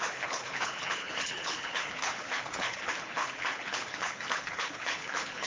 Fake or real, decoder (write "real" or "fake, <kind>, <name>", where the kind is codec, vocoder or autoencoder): fake, codec, HILCodec